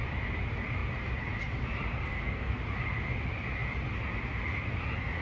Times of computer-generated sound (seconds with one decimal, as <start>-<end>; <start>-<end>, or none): 1.9-2.6